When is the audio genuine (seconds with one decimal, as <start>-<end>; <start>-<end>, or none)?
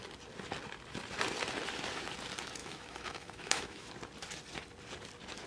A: 0.0-2.6; 3.9-5.5